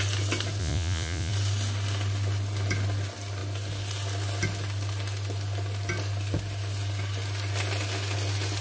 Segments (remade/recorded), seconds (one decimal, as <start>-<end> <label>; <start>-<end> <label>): 0.0-0.6 recorded; 0.6-1.3 remade; 1.3-8.6 recorded